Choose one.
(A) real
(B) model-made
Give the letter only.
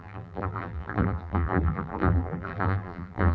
B